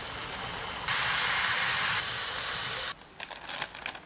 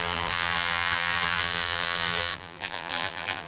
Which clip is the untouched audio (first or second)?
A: first